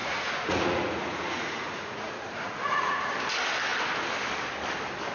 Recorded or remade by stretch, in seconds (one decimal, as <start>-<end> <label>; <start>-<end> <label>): 0.0-3.1 remade; 3.1-5.1 recorded